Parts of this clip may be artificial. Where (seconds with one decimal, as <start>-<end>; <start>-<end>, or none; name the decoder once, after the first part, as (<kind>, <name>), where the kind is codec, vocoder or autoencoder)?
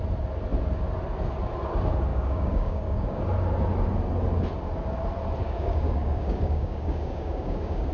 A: 2.1-3.2 (codec, DAC); 5.4-7.9